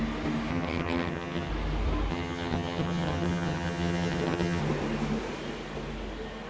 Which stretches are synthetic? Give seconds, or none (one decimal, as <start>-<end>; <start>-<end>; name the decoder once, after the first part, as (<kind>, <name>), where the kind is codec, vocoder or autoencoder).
0.5-1.5 (vocoder, HiFi-GAN); 2.1-4.6